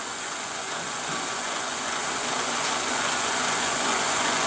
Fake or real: fake